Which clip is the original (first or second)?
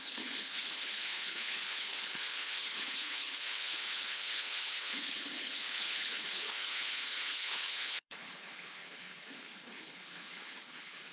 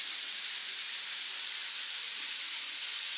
second